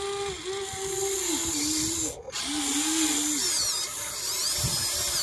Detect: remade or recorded recorded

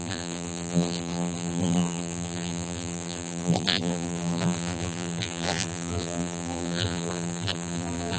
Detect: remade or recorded remade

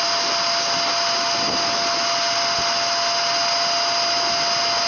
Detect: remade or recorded recorded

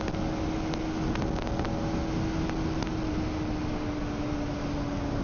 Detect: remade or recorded recorded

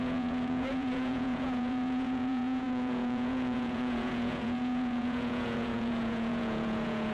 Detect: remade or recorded remade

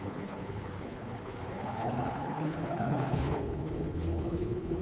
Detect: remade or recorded remade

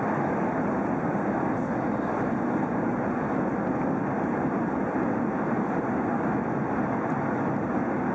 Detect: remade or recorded recorded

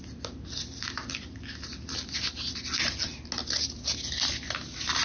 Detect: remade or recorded recorded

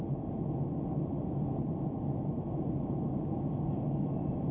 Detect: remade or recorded recorded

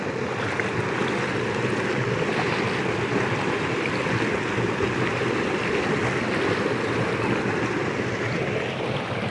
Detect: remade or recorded recorded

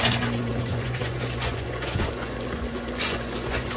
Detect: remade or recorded remade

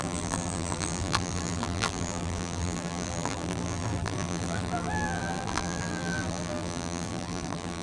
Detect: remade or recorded remade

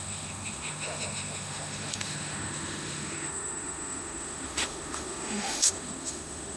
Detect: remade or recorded remade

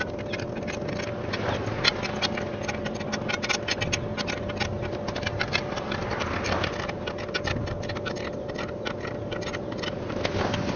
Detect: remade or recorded recorded